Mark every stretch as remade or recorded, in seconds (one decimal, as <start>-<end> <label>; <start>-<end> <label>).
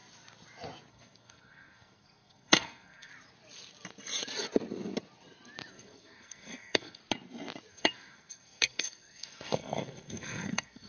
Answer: 0.0-0.9 recorded; 0.9-3.1 remade; 3.1-5.7 recorded; 5.7-7.0 remade; 7.0-7.7 recorded; 7.7-10.9 remade